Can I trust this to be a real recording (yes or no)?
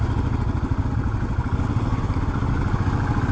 yes